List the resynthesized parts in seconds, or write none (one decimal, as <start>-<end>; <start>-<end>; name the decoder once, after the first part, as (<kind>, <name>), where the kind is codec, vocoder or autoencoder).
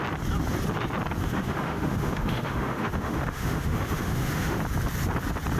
1.2-4.6 (autoencoder, DAC-VAE)